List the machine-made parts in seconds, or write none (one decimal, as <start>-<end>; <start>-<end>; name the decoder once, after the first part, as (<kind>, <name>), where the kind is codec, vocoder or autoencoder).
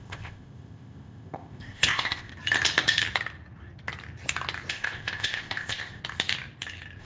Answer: 0.0-2.3 (codec, ZipCodec); 4.7-6.0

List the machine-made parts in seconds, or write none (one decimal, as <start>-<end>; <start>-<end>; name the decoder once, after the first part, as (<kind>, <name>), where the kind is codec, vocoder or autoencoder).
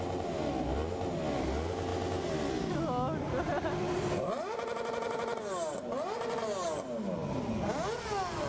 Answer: none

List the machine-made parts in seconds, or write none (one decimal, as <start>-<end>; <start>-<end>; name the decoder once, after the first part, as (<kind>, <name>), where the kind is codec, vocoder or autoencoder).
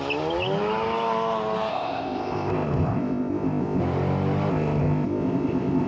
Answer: 1.7-3.8 (codec, ZipCodec); 4.5-5.9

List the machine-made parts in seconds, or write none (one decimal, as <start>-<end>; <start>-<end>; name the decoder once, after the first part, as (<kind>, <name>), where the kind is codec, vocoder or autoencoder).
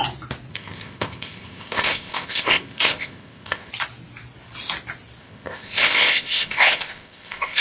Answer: 0.5-3.7 (codec, ZipCodec); 5.2-7.6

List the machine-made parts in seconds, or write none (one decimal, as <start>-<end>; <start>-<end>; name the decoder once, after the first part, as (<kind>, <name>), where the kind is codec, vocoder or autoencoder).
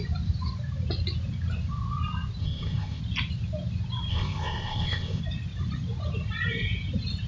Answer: 2.4-3.0 (codec, ZipCodec); 4.1-5.2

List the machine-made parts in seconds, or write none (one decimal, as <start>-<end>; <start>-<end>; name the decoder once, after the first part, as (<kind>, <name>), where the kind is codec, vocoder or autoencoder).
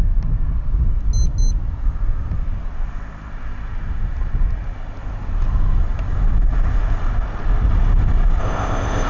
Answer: 8.4-9.1 (codec, ZipCodec)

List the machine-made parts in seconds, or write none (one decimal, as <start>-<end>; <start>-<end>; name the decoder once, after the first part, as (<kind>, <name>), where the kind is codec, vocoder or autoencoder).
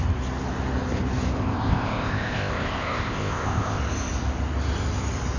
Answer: 1.4-3.8 (codec, ZipCodec)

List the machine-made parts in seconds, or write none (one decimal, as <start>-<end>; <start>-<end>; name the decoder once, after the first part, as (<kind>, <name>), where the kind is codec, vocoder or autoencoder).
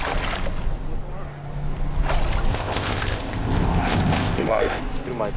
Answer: 2.5-4.8 (codec, ZipCodec)